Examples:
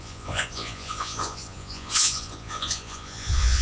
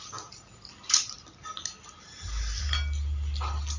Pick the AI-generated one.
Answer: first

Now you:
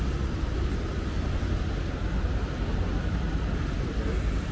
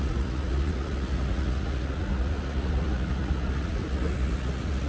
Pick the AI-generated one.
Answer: second